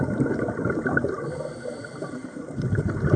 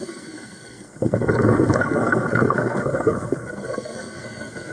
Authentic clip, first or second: first